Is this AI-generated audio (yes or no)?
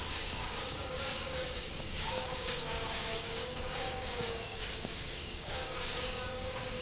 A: yes